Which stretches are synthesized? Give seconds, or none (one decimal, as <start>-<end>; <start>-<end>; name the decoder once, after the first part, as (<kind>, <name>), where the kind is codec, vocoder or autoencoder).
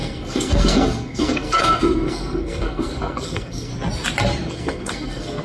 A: 0.0-3.7 (codec, SNAC); 4.5-5.4